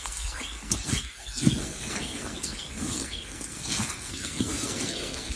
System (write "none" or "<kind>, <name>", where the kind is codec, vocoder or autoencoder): codec, SNAC